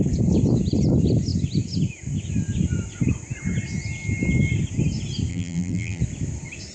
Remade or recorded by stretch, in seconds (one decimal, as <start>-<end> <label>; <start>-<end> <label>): 0.0-5.3 recorded; 5.3-6.0 remade; 6.0-6.7 recorded